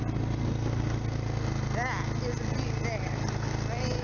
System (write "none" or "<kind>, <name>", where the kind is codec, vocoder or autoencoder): none